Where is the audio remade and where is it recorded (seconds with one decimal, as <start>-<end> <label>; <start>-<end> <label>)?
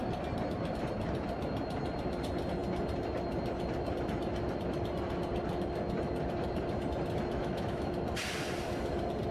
0.0-7.4 recorded; 7.4-7.9 remade; 7.9-9.3 recorded